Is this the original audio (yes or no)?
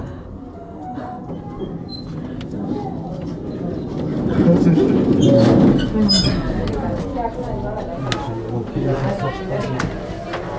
yes